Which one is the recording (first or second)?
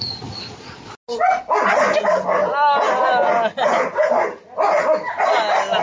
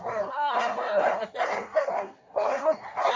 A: first